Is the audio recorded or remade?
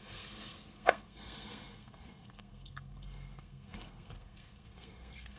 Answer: remade